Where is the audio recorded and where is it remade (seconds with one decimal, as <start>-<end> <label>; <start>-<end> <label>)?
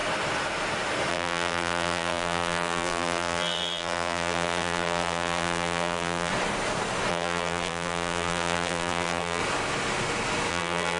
0.0-1.1 recorded; 1.1-6.3 remade; 6.3-7.1 recorded; 7.1-9.4 remade; 9.4-10.5 recorded; 10.5-11.0 remade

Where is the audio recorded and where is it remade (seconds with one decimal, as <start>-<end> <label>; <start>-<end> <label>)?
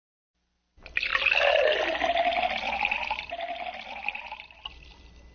0.0-1.1 remade; 1.1-4.3 recorded; 4.3-5.3 remade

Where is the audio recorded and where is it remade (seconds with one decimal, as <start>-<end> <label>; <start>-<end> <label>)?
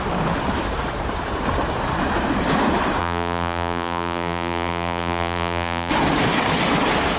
0.0-3.0 recorded; 3.0-5.9 remade; 5.9-7.2 recorded